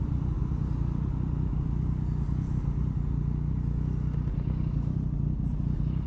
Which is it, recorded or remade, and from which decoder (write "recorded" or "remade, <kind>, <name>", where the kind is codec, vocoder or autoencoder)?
recorded